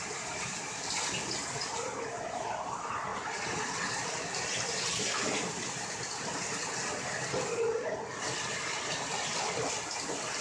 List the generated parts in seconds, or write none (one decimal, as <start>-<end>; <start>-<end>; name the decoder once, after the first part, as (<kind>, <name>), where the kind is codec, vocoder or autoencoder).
none